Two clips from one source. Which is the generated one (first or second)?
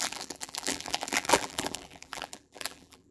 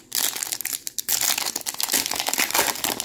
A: first